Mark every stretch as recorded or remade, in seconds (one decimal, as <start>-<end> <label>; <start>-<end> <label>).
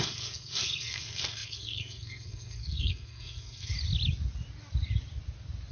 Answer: 0.0-3.7 remade; 3.7-5.7 recorded